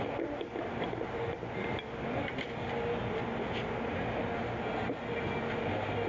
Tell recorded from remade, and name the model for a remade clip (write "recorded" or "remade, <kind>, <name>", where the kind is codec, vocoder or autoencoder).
recorded